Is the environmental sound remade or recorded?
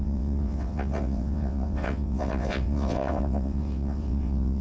remade